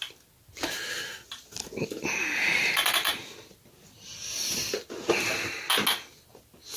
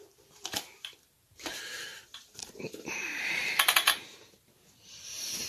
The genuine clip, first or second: first